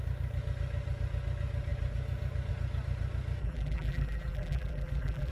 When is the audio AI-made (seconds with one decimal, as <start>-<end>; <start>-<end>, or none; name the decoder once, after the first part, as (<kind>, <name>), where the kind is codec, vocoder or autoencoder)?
3.4-5.3 (vocoder, BigVGAN v2)